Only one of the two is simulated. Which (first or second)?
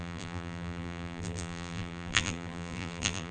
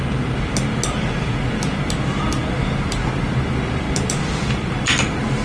first